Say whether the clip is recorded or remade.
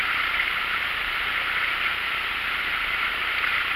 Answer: recorded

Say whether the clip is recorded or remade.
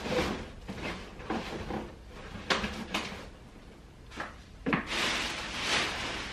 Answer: recorded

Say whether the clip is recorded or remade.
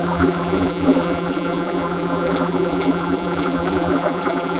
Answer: remade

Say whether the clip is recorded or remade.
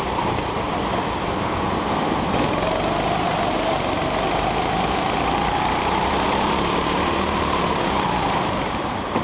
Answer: remade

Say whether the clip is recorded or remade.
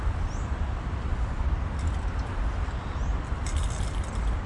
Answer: remade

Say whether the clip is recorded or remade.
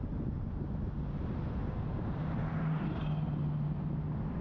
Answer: recorded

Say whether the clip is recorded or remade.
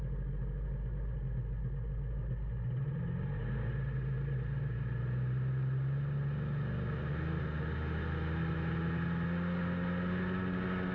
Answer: recorded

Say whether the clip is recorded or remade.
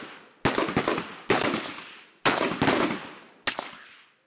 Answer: recorded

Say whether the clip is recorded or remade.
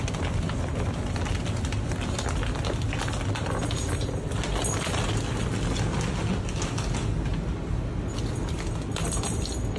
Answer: recorded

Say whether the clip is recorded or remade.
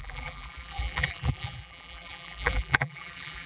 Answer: remade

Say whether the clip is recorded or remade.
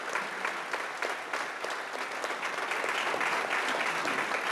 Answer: recorded